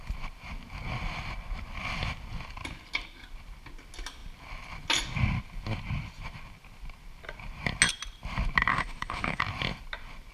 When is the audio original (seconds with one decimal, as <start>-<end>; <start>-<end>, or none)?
0.0-8.7; 9.4-10.3